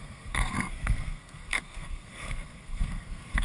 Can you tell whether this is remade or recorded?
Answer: remade